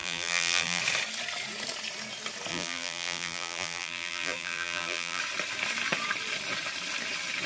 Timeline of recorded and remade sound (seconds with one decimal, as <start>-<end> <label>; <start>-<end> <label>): 0.0-0.8 remade; 0.8-2.5 recorded; 2.5-5.2 remade; 5.2-7.5 recorded